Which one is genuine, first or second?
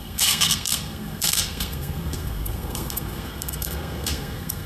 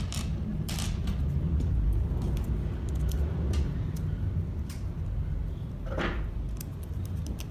second